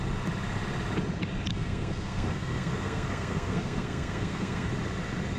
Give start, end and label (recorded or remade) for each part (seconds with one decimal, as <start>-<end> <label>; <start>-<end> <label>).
0.0-1.5 recorded; 1.5-4.7 remade; 4.7-5.4 recorded